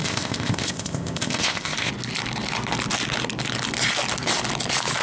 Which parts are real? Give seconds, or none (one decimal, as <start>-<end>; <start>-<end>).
1.9-5.0